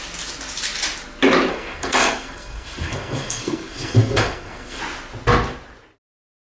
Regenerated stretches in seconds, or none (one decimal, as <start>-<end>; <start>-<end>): 1.5-4.8